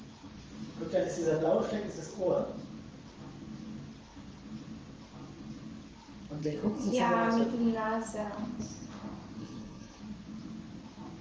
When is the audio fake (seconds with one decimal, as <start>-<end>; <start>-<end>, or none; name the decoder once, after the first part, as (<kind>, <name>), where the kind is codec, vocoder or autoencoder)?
6.4-7.0 (codec, SNAC); 9.4-10.0